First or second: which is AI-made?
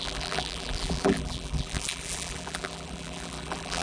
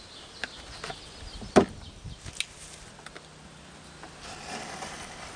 first